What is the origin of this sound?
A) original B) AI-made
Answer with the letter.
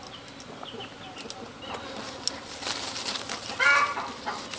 A